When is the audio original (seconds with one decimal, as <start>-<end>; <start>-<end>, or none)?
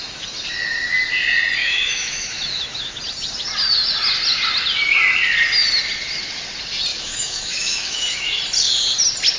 0.0-1.6; 3.0-6.9; 8.4-9.4